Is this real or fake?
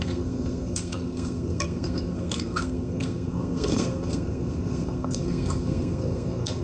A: fake